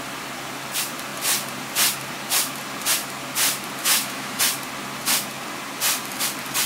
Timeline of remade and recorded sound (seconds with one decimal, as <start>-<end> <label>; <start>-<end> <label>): 0.0-3.8 recorded; 3.8-4.4 remade; 4.4-6.7 recorded

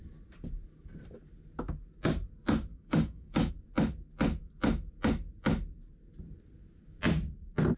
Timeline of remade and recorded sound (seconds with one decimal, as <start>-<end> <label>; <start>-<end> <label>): 0.0-2.7 recorded; 2.7-3.5 remade; 3.5-7.8 recorded

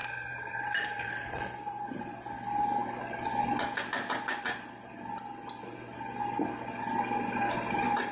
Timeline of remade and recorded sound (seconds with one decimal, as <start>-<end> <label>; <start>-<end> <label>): 0.0-1.8 remade; 1.8-8.1 recorded

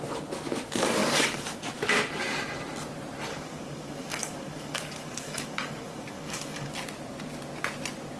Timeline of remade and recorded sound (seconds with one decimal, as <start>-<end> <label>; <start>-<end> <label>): 0.0-1.0 recorded; 1.0-1.7 remade; 1.7-3.3 recorded; 3.3-6.7 remade; 6.7-8.2 recorded